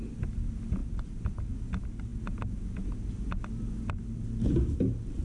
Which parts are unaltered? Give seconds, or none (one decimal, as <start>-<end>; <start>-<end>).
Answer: 0.0-5.2